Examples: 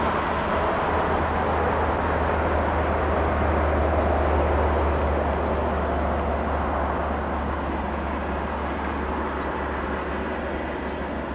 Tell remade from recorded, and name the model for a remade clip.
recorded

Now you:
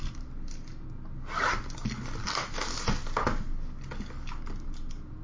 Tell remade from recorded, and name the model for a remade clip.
recorded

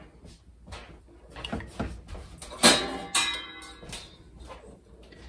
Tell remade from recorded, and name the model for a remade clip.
recorded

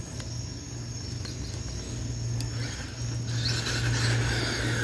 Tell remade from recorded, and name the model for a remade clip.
recorded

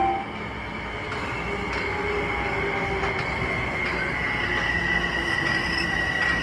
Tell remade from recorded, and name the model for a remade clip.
recorded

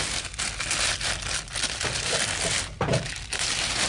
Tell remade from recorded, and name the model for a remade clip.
recorded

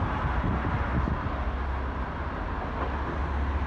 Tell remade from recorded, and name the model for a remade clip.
recorded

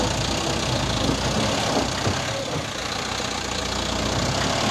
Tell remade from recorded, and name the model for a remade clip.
recorded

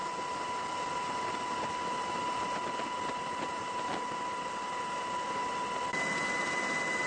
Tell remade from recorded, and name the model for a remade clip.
recorded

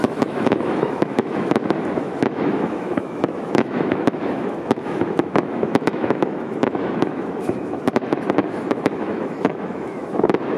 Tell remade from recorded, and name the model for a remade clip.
remade, autoencoder, DAC-VAE